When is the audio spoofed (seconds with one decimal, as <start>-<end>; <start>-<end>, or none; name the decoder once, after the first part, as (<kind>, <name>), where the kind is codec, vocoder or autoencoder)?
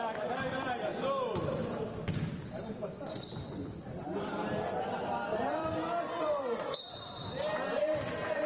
1.6-3.0 (vocoder, BigVGAN v2); 3.6-8.0